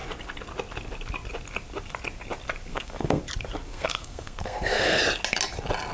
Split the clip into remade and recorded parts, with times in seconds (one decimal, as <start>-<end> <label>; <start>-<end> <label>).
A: 0.0-2.7 recorded; 2.7-3.2 remade; 3.2-3.7 recorded; 3.7-5.0 remade; 5.0-5.9 recorded